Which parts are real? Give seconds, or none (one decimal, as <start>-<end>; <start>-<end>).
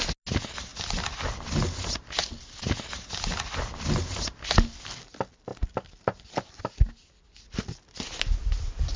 0.0-9.0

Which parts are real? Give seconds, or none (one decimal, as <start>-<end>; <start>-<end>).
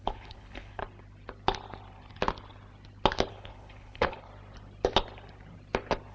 0.8-3.3; 4.3-6.1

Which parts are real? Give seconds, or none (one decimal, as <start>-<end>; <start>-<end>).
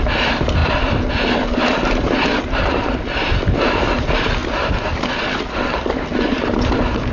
0.0-7.1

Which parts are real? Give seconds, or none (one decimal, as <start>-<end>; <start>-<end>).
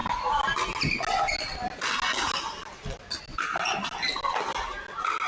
0.0-5.3